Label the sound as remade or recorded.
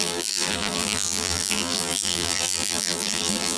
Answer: remade